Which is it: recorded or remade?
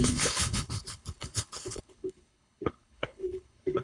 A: remade